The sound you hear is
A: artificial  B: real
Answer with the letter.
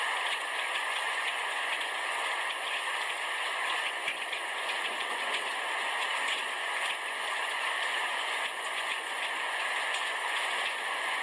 A